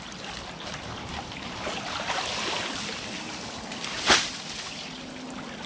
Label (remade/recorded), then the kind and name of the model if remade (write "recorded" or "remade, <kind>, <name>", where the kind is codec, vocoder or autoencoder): recorded